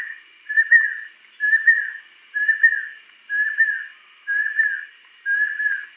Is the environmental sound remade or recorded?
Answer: recorded